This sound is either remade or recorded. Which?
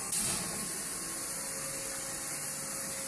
recorded